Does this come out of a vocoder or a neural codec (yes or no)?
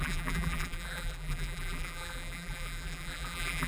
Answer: yes